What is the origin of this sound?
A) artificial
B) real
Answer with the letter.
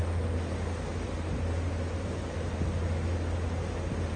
B